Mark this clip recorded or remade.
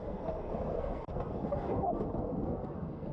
remade